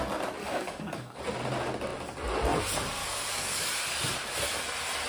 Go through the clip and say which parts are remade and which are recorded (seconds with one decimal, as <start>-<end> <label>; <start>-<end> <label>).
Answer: 0.0-0.4 recorded; 0.4-1.2 remade; 1.2-3.0 recorded; 3.0-3.7 remade; 3.7-5.1 recorded